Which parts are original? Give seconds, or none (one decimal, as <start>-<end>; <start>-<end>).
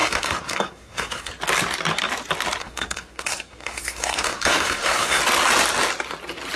1.3-2.6; 5.2-6.6